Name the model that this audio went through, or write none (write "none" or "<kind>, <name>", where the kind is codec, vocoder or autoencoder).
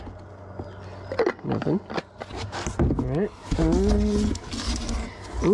none